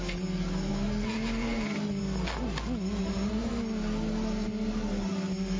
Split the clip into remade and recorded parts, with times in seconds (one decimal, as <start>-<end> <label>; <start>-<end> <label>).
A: 0.0-0.7 recorded; 0.7-2.0 remade; 2.0-3.0 recorded; 3.0-3.5 remade; 3.5-5.6 recorded